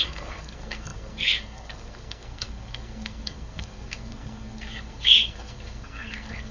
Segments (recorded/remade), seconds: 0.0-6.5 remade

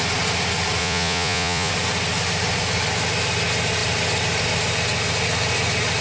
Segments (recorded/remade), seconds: 0.0-0.8 recorded; 0.8-1.7 remade; 1.7-6.0 recorded

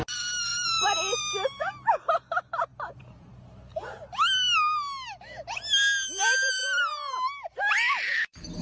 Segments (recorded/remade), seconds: 0.0-0.5 recorded; 0.5-1.2 remade; 1.2-2.7 recorded; 2.7-3.3 remade; 3.3-8.6 recorded

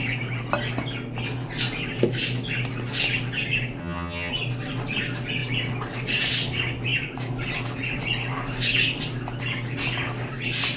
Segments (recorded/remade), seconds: 0.0-3.8 recorded; 3.8-4.3 remade; 4.3-10.8 recorded

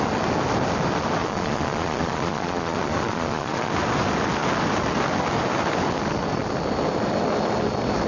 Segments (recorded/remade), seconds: 0.0-1.2 recorded; 1.2-3.7 remade; 3.7-8.1 recorded

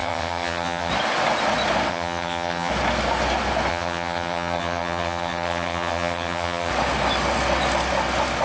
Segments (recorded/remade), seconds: 0.0-0.9 remade; 0.9-1.9 recorded; 1.9-2.7 remade; 2.7-3.7 recorded; 3.7-6.7 remade; 6.7-8.4 recorded